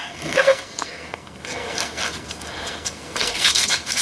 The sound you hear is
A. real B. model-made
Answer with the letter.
B